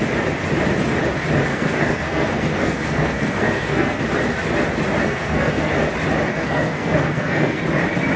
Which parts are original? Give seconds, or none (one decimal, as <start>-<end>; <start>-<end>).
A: 0.0-1.5; 4.0-5.0; 5.7-6.3; 7.6-8.2